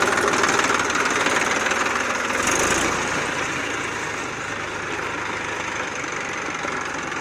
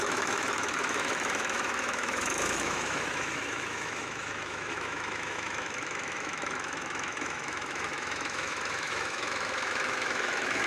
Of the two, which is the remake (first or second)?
second